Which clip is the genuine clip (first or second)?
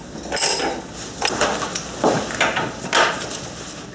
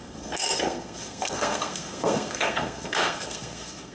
first